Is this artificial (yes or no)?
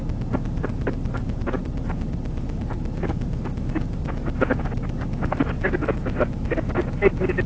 no